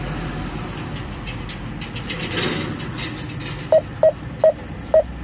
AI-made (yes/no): no